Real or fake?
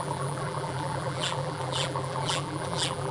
fake